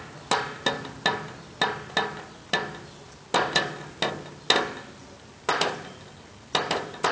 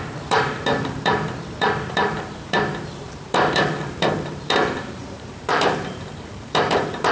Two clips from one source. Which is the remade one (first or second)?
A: second